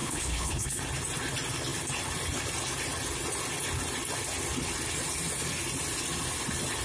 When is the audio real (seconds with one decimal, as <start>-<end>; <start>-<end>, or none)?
0.8-6.8